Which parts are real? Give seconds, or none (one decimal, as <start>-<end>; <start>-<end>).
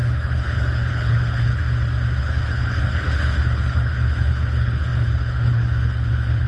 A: 1.6-2.2